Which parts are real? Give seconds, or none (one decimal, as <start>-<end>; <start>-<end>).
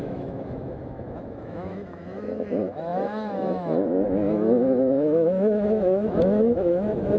none